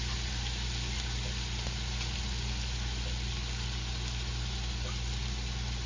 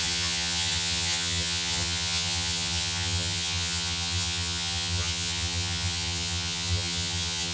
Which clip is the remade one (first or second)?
second